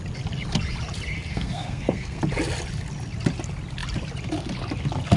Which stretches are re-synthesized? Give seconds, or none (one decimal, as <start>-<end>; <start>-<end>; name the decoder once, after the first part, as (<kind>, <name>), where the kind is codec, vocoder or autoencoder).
1.3-2.2 (codec, SNAC)